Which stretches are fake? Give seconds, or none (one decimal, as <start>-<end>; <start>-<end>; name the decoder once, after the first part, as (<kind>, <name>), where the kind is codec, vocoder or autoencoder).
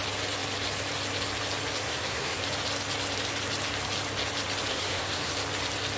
1.8-2.4 (codec, SNAC); 4.7-5.3